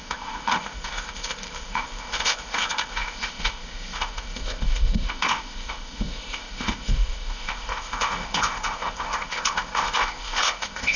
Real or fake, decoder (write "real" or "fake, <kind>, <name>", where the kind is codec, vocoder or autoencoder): fake, codec, ZipCodec